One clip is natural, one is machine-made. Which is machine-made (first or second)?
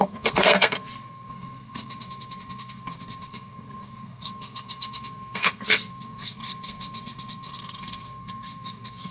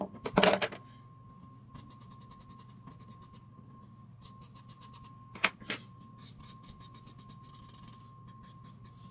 first